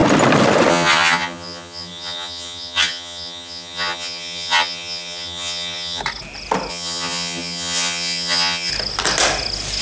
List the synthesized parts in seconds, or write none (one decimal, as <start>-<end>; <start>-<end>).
0.7-6.0; 6.7-8.7